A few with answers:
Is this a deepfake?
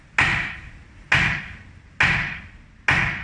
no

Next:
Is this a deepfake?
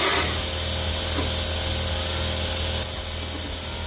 no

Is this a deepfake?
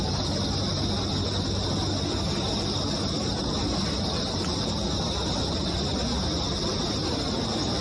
no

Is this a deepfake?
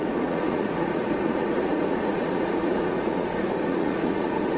yes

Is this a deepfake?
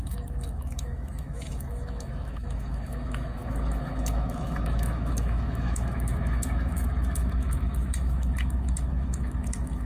yes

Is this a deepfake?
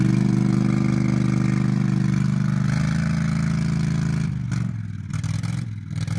no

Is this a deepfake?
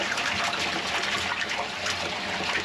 no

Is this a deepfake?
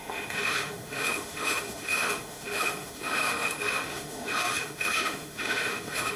yes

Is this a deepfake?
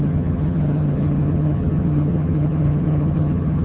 yes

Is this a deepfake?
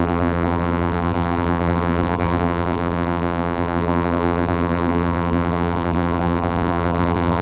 yes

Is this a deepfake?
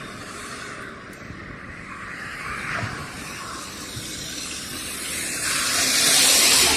no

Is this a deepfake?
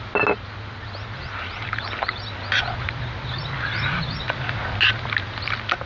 no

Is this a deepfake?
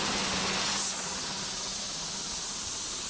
no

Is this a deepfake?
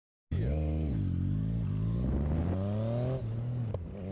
no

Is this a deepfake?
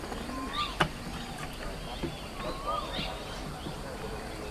no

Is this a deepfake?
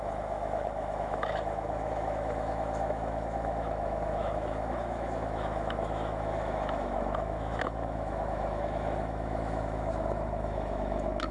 yes